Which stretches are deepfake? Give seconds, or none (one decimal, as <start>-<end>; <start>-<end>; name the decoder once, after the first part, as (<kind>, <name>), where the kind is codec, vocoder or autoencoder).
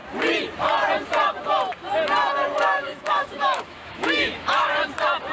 2.5-4.7 (autoencoder, DAC-VAE)